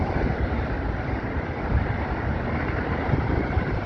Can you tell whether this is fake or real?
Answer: real